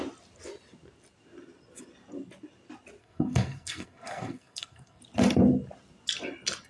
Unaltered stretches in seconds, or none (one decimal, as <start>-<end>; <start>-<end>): 0.0-3.0; 5.0-6.7